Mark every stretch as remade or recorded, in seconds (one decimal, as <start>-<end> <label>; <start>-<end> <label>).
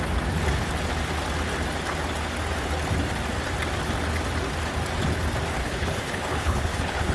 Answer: 0.0-5.6 recorded; 5.6-7.1 remade